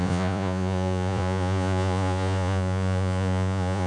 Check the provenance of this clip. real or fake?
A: fake